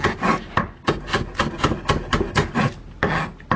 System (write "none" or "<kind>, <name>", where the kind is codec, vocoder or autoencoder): none